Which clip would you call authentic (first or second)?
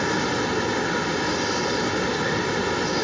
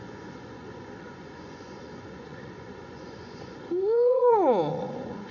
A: first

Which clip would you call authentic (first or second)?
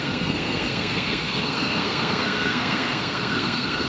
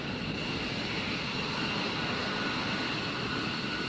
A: second